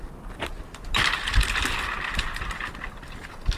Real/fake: real